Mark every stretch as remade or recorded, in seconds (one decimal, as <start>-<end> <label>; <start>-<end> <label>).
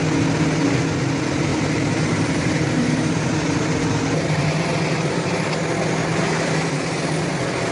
0.0-1.5 recorded; 1.5-5.5 remade; 5.5-6.0 recorded; 6.0-6.8 remade; 6.8-7.7 recorded